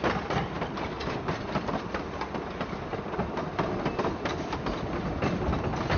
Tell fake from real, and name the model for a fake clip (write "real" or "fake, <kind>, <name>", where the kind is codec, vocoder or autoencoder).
fake, vocoder, BigVGAN v2